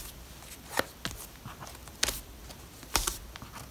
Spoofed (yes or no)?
no